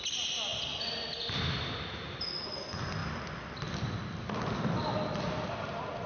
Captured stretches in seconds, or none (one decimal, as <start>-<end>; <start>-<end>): 0.0-6.1